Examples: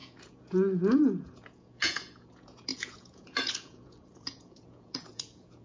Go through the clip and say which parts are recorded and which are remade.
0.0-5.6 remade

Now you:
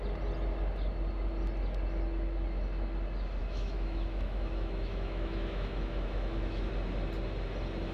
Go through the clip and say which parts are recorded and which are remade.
0.0-3.4 recorded; 3.4-6.7 remade; 6.7-7.9 recorded

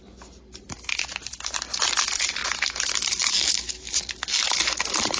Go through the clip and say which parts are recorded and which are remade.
0.0-5.2 recorded

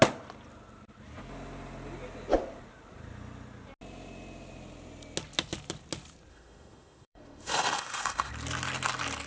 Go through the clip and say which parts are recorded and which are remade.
0.0-6.3 recorded; 6.3-8.3 remade; 8.3-9.3 recorded

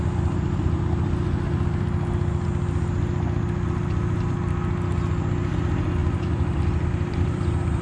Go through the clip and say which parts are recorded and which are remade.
0.0-6.0 recorded; 6.0-7.8 remade

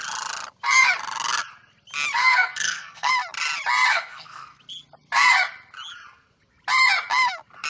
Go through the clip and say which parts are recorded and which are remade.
0.0-2.2 recorded; 2.2-3.1 remade; 3.1-3.9 recorded; 3.9-4.6 remade; 4.6-7.7 recorded

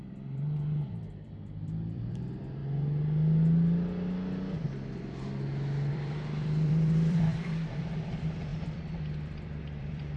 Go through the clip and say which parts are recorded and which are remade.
0.0-2.6 remade; 2.6-5.9 recorded; 5.9-10.2 remade

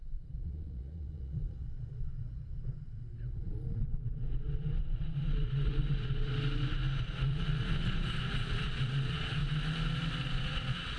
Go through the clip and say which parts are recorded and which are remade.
0.0-6.3 remade; 6.3-7.0 recorded; 7.0-9.4 remade; 9.4-10.3 recorded; 10.3-11.0 remade